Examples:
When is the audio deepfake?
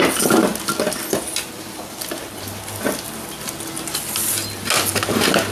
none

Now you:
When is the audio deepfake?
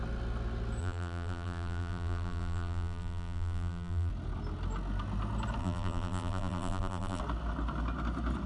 0.8-4.1 (vocoder, BigVGAN v2); 5.6-7.2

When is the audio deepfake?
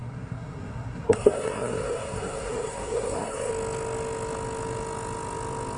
0.0-3.5 (codec, SNAC)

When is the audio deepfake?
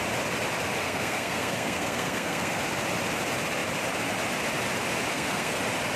0.8-2.6 (codec, SNAC); 5.1-5.6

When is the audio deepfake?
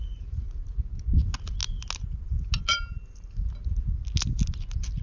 none